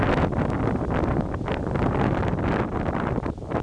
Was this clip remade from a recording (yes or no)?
no